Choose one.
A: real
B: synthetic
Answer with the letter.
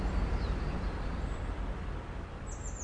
A